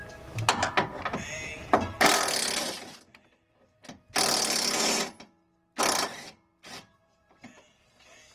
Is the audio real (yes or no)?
yes